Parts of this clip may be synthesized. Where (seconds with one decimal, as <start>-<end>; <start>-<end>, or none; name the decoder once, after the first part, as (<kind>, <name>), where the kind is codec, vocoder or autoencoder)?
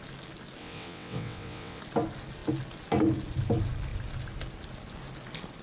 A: 0.6-1.8 (vocoder, WaveNeXt)